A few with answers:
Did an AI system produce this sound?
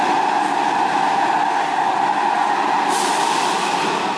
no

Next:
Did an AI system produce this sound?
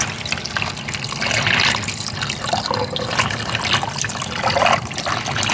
no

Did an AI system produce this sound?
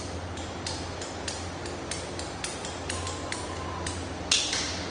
no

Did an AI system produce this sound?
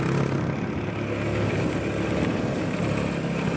no